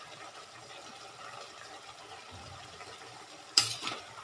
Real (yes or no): no